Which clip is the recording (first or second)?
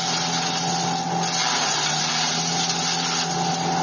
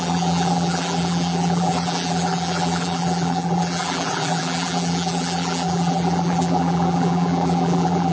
first